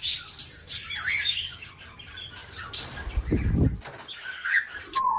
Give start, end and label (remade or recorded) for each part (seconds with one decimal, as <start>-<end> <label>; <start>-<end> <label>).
0.0-0.6 recorded; 0.6-1.7 remade; 1.7-5.2 recorded